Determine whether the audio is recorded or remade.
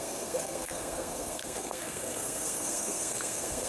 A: remade